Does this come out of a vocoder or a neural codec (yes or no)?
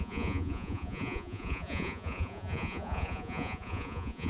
yes